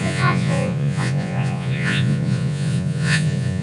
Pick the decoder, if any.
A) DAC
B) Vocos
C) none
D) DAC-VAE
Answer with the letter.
B